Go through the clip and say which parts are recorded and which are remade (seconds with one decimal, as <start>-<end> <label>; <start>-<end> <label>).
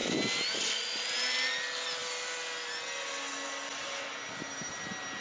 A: 0.0-5.2 recorded